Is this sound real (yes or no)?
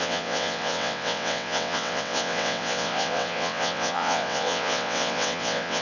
no